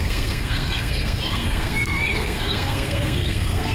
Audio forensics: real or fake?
fake